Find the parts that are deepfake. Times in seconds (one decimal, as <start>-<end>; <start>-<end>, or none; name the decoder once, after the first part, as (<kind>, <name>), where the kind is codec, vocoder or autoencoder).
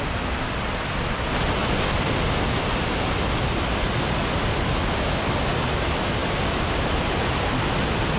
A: none